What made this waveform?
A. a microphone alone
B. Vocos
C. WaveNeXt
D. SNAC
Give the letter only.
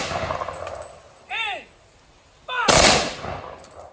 A